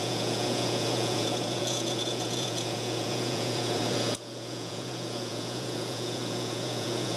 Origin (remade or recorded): remade